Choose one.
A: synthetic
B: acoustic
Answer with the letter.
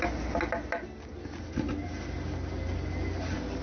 B